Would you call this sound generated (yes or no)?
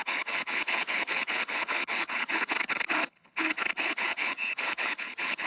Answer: yes